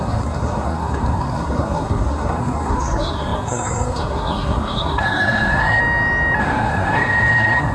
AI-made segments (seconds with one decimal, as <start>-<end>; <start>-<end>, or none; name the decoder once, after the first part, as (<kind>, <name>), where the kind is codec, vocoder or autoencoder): 0.0-5.8 (codec, SNAC); 6.4-7.7